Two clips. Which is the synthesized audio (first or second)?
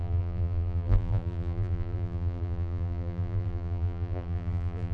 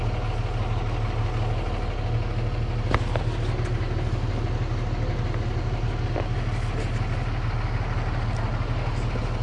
first